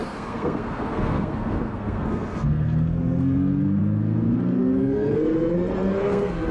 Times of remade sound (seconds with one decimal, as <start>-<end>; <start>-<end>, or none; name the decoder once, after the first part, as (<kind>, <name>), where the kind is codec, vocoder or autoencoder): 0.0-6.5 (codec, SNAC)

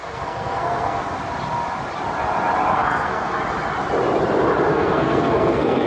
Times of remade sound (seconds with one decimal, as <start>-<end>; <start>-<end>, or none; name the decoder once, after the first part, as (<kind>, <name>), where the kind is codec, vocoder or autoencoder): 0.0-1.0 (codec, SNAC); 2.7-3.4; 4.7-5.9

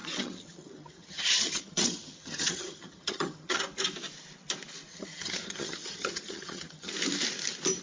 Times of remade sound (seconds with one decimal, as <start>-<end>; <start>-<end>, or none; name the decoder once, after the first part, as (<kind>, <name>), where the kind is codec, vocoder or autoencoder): 0.0-3.6 (vocoder, HiFi-GAN); 4.9-6.9

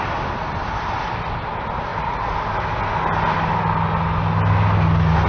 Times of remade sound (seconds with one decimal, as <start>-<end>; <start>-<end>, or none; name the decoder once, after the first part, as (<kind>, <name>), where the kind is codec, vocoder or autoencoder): none

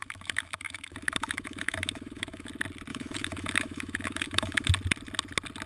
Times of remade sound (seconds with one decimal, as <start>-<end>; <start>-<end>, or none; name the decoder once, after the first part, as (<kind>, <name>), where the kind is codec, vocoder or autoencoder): 0.0-2.5 (autoencoder, DAC-VAE); 2.9-4.7